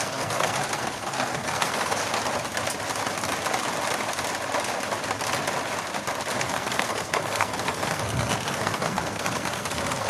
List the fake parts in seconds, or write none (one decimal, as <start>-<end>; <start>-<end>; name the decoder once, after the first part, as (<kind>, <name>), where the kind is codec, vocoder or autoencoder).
0.0-2.0 (codec, SNAC); 6.4-10.1